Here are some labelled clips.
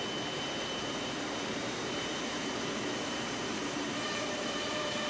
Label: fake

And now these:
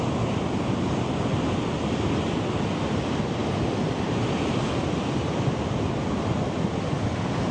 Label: real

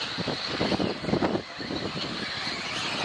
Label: real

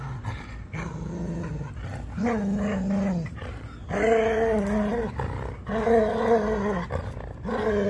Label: real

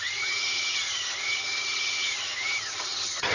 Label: fake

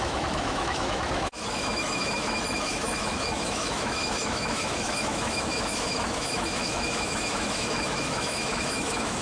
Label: fake